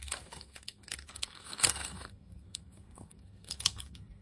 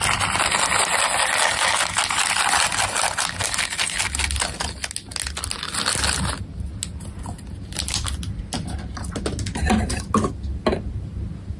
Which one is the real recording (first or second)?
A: second